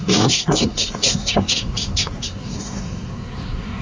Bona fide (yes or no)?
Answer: no